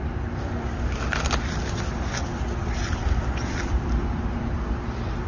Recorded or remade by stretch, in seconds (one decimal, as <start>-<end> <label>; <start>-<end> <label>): 0.0-5.3 recorded